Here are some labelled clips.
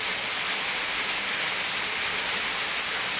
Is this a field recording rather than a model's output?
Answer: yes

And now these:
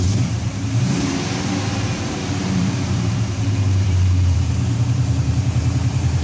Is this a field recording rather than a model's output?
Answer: no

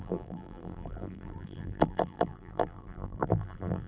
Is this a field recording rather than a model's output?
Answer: no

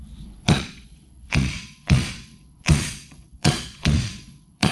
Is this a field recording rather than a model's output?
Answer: no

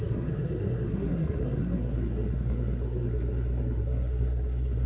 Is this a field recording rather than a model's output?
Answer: no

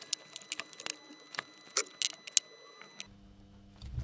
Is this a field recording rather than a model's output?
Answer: yes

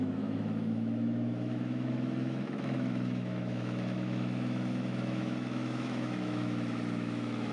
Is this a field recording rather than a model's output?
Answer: no